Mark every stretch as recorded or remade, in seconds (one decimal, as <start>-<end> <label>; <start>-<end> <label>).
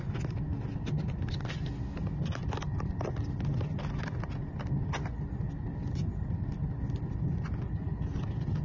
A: 0.0-8.6 recorded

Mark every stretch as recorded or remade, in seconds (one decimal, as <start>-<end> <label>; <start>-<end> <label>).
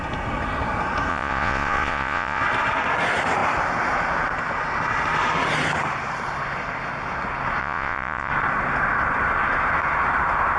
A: 0.0-1.1 recorded; 1.1-2.4 remade; 2.4-7.6 recorded; 7.6-8.3 remade; 8.3-10.6 recorded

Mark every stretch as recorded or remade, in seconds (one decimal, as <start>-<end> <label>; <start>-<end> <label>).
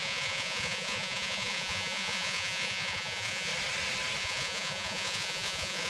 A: 0.0-3.5 remade; 3.5-4.2 recorded; 4.2-5.9 remade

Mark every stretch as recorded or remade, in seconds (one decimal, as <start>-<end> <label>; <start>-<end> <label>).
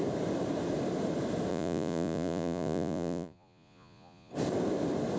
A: 0.0-1.5 recorded; 1.5-4.3 remade; 4.3-5.2 recorded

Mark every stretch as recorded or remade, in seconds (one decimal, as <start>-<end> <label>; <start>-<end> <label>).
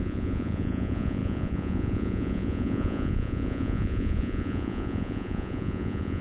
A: 0.0-6.2 remade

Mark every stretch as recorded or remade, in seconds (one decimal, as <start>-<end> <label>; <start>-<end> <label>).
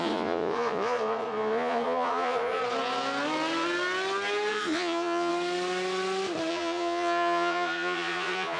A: 0.0-2.6 remade; 2.6-4.5 recorded; 4.5-5.3 remade; 5.3-6.5 recorded; 6.5-8.6 remade